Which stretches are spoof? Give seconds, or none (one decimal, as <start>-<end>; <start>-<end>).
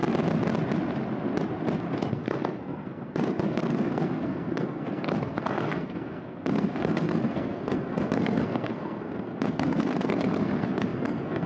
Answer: 2.1-11.5